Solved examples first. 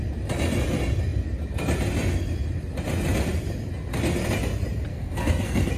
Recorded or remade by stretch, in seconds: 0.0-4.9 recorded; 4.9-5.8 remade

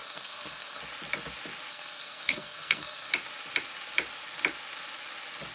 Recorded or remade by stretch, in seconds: 0.0-0.8 remade; 0.8-1.7 recorded; 1.7-3.1 remade; 3.1-5.5 recorded

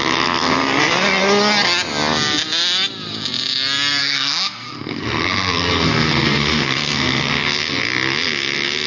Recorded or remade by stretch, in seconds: 0.0-4.0 recorded; 4.0-7.3 remade; 7.3-8.9 recorded

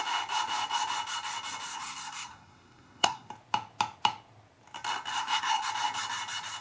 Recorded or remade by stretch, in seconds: 0.0-1.7 recorded; 1.7-3.3 remade; 3.3-5.1 recorded; 5.1-5.7 remade; 5.7-6.6 recorded

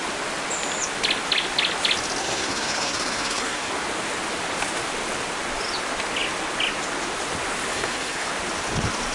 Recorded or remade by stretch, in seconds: 0.0-2.2 recorded; 2.2-3.7 remade; 3.7-7.7 recorded; 7.7-8.3 remade; 8.3-9.1 recorded

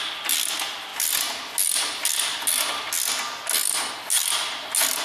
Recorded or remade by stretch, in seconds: 0.0-5.0 recorded